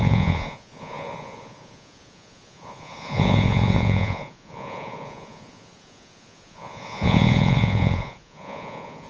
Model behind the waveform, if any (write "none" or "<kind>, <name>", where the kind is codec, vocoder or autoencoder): vocoder, Vocos